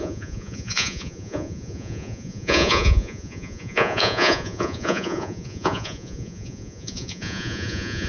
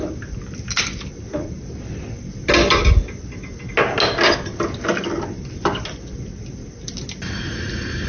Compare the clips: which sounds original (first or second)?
second